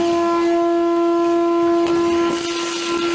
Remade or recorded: recorded